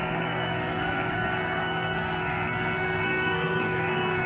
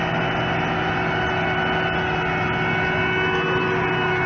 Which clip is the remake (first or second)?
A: first